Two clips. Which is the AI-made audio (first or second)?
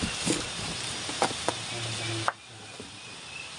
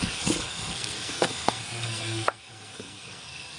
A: second